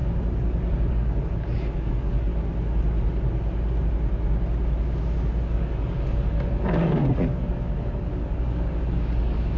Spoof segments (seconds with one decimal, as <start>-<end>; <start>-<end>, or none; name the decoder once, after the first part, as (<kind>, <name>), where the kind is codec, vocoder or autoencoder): 0.9-2.3 (codec, DAC); 5.4-9.6